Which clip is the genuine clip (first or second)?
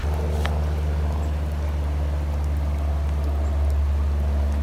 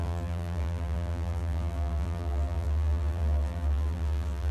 first